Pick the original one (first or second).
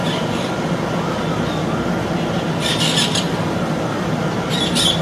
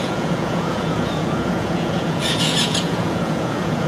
first